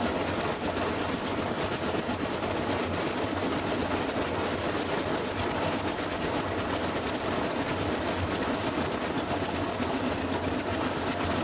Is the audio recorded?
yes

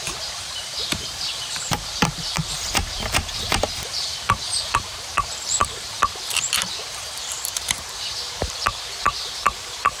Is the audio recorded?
no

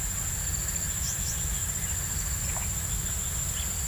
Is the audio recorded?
yes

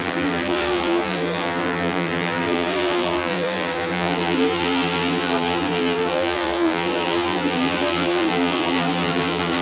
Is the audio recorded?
no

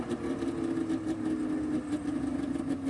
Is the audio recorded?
yes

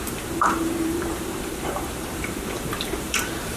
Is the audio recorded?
no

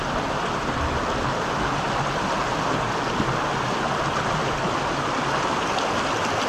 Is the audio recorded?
yes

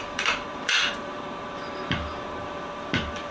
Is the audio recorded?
no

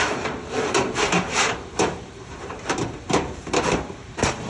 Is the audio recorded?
no